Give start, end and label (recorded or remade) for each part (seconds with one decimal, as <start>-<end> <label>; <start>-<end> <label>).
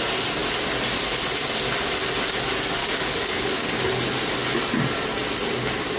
0.0-2.8 recorded; 2.8-3.8 remade; 3.8-6.0 recorded